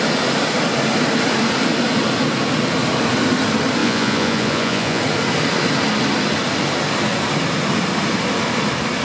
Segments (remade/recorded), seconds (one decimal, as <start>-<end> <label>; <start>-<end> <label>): 0.0-3.8 recorded; 3.8-5.0 remade; 5.0-9.0 recorded